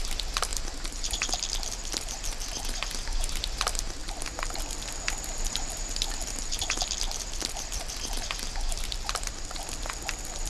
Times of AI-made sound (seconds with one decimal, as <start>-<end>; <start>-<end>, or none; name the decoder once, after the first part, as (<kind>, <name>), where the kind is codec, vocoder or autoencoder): 0.0-10.5 (vocoder, BigVGAN v2)